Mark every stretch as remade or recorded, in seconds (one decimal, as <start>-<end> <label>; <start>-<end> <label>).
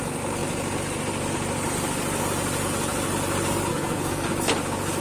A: 0.0-3.7 recorded; 3.7-4.3 remade; 4.3-5.0 recorded